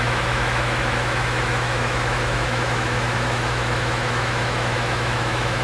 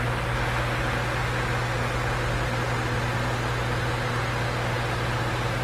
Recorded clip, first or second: second